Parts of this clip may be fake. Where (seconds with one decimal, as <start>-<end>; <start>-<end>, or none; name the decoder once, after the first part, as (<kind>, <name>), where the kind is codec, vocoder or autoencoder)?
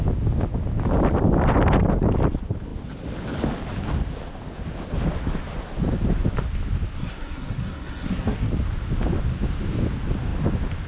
7.0-8.5 (codec, SNAC)